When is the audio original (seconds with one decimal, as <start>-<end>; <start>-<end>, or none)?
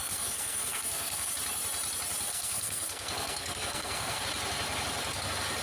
1.3-2.3; 4.2-5.6